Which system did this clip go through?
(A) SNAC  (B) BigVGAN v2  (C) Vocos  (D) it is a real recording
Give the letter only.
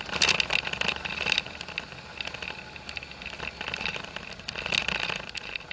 D